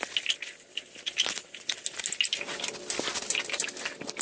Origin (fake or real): real